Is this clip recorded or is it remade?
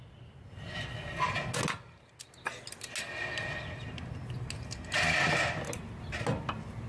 recorded